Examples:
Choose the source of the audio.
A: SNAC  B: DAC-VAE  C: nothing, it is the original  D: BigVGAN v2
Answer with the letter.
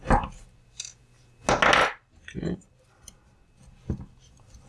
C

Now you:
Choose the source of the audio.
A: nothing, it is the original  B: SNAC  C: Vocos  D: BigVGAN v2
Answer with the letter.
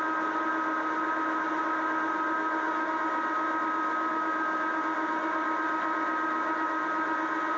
A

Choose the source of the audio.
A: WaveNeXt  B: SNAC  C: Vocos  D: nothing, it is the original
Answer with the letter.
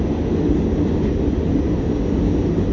D